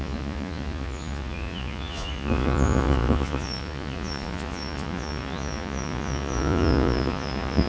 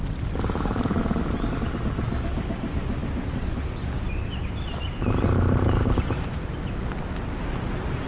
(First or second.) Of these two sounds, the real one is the second